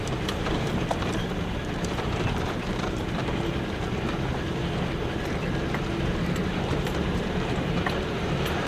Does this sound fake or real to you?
fake